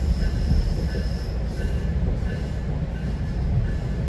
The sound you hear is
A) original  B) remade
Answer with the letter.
A